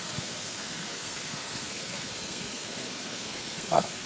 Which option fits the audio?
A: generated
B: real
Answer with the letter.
A